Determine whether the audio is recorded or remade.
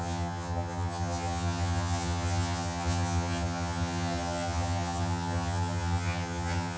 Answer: remade